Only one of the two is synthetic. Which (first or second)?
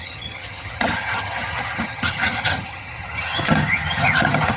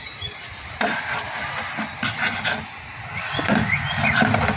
first